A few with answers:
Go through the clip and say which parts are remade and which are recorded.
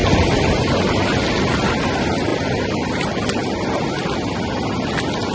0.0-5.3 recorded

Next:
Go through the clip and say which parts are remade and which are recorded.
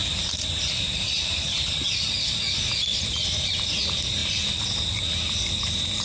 0.0-1.8 remade; 1.8-2.9 recorded; 2.9-3.5 remade; 3.5-6.0 recorded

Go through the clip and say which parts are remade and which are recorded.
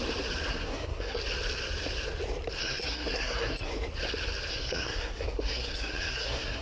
0.0-0.5 recorded; 0.5-1.2 remade; 1.2-2.6 recorded; 2.6-3.7 remade; 3.7-4.5 recorded; 4.5-6.6 remade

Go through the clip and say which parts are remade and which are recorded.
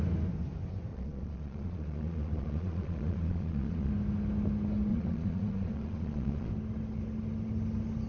0.0-0.9 recorded; 0.9-3.9 remade; 3.9-4.9 recorded; 4.9-6.5 remade; 6.5-8.1 recorded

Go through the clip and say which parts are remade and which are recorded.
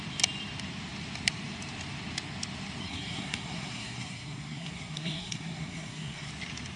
0.0-2.8 recorded; 2.8-6.3 remade; 6.3-6.8 recorded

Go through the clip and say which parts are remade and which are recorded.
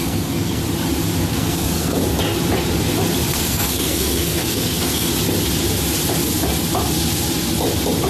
0.0-0.6 remade; 0.6-1.3 recorded; 1.3-2.0 remade; 2.0-3.3 recorded; 3.3-5.1 remade; 5.1-8.1 recorded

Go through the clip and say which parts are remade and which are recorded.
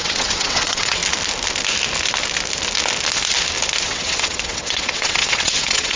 0.0-1.0 remade; 1.0-3.8 recorded; 3.8-6.0 remade